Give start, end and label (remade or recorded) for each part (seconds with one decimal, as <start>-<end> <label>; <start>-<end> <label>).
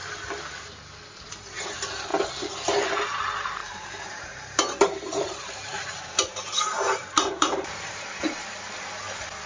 0.0-3.6 recorded; 3.6-7.9 remade; 7.9-9.5 recorded